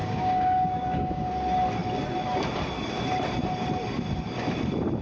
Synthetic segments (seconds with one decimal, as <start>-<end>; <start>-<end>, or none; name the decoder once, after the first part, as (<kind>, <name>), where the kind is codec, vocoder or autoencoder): 0.0-1.3 (codec, DAC)